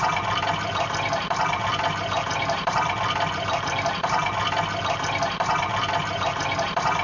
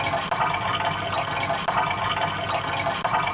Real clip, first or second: second